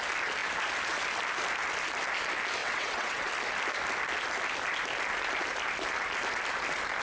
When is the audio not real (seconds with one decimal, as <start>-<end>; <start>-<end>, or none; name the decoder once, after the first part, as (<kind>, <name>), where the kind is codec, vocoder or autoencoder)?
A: 2.6-3.3 (vocoder, WaveNeXt)